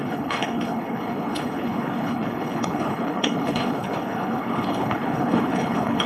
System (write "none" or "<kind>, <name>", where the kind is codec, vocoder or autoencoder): codec, HILCodec